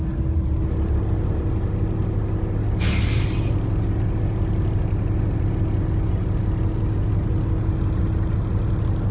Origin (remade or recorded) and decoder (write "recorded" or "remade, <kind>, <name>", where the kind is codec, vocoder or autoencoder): recorded